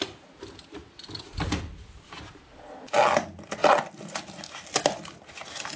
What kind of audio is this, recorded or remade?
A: recorded